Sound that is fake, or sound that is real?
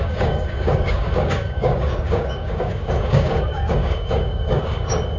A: fake